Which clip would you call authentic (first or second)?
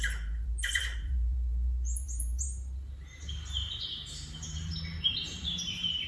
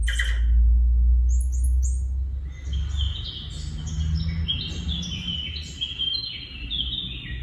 second